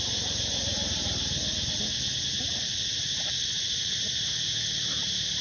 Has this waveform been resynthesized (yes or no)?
no